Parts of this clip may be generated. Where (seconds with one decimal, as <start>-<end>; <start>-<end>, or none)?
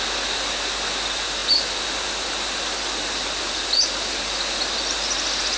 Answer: none